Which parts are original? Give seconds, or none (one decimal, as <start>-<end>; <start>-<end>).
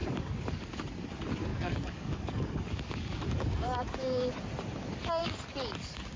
0.8-1.5; 4.3-5.2